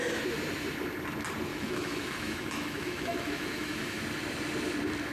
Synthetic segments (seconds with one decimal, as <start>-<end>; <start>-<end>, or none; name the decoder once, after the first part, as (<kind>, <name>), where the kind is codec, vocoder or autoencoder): 1.5-4.0 (autoencoder, DAC-VAE)